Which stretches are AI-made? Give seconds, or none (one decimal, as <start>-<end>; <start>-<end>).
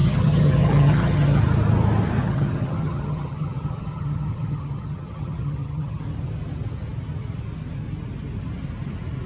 0.0-1.4; 2.2-6.0